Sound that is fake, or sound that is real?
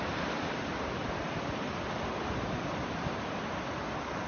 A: fake